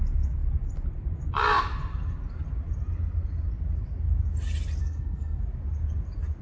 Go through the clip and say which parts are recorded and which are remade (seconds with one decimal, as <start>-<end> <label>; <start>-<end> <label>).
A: 0.0-4.8 recorded; 4.8-5.4 remade; 5.4-6.4 recorded